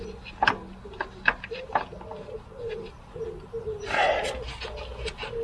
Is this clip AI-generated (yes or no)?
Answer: no